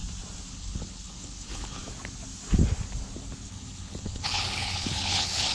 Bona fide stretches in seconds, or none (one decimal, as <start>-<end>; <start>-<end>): 0.0-0.5; 1.8-3.5